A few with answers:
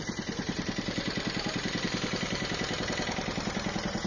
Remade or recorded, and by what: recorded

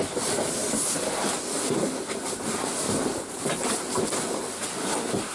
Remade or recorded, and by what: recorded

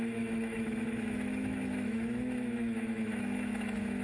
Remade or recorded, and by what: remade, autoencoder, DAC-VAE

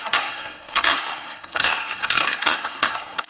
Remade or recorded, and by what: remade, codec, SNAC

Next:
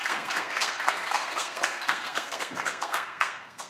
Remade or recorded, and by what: remade, codec, SNAC